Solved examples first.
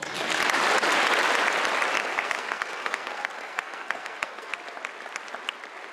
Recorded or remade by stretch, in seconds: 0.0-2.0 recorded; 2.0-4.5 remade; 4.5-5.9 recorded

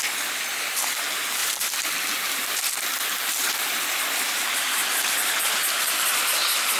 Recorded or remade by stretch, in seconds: 0.0-1.4 recorded; 1.4-3.0 remade; 3.0-6.8 recorded

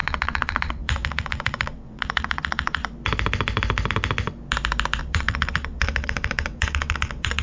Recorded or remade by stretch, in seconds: 0.0-2.8 remade; 2.8-5.0 recorded; 5.0-7.4 remade

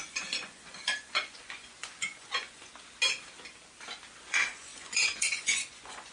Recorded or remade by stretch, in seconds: 0.0-2.7 remade; 2.7-4.2 recorded; 4.2-6.1 remade

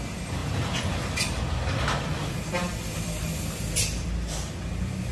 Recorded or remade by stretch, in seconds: 0.0-5.1 recorded

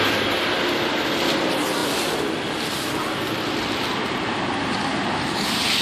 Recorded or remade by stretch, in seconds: 0.0-5.8 recorded